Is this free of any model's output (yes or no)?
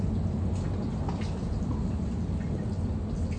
yes